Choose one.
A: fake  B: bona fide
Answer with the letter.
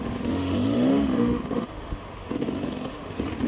A